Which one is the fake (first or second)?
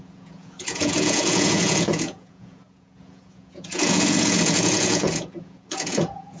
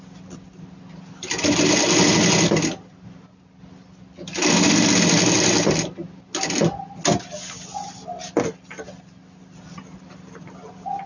first